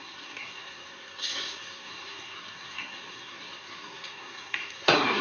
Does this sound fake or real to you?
fake